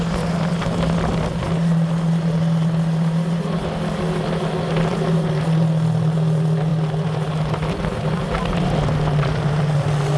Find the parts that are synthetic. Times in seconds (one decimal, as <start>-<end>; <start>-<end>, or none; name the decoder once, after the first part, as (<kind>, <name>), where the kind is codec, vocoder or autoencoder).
none